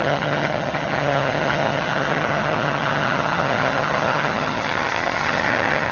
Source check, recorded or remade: remade